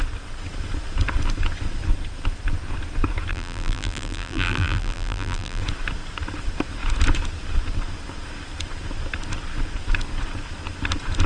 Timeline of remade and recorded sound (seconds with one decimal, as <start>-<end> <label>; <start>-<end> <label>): 0.0-3.3 recorded; 3.3-5.6 remade; 5.6-11.3 recorded